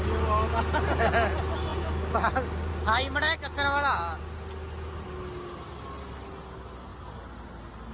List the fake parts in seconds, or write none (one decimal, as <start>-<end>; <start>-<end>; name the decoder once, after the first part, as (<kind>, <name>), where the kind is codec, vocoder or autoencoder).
none